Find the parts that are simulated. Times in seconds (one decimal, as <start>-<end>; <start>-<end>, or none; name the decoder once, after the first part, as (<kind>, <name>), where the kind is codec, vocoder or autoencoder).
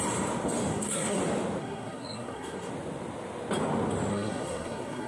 0.7-1.2 (codec, SNAC); 1.6-2.7; 4.1-5.1